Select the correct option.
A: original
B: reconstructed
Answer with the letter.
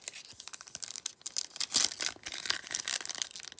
A